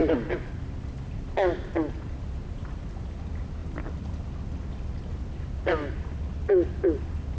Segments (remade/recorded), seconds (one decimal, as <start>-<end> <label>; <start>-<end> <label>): 0.0-7.4 recorded